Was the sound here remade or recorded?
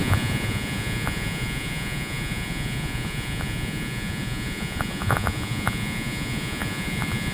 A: remade